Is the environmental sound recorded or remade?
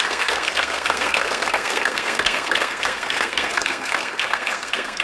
remade